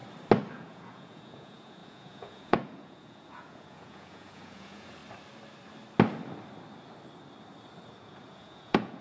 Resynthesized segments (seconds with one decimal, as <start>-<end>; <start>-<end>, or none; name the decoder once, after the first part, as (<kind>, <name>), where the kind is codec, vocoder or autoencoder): 0.5-5.0 (vocoder, Vocos); 7.9-9.0